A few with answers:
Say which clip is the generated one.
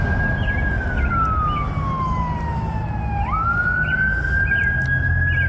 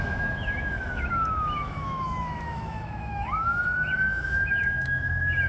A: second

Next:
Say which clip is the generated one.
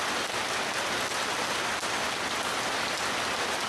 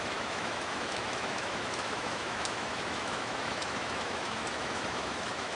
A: second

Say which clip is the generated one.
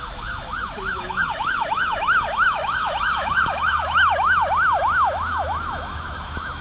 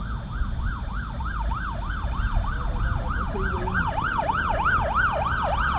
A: first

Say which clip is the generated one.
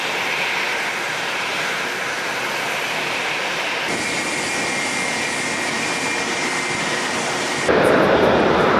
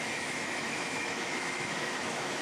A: second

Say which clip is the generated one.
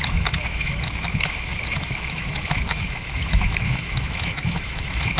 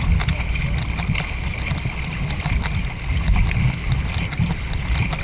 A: first